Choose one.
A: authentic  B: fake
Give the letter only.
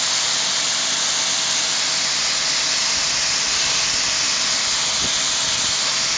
A